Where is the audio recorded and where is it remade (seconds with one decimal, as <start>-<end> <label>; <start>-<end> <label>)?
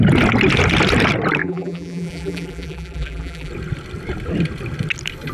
0.0-1.4 recorded; 1.4-3.5 remade; 3.5-5.3 recorded